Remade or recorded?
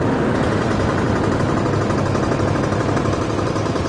recorded